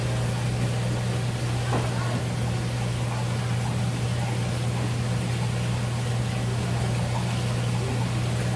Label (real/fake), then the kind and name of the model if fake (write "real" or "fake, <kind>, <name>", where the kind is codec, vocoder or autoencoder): real